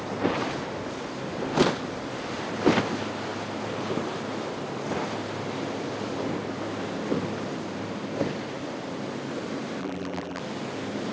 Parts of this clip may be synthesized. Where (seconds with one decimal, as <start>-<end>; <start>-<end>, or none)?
9.8-10.4